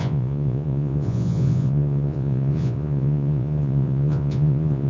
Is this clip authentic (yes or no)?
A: no